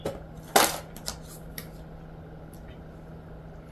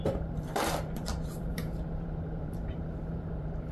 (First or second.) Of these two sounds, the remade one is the second